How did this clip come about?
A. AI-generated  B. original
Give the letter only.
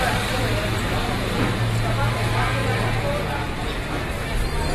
B